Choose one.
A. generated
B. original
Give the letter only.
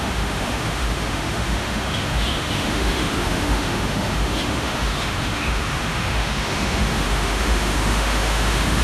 A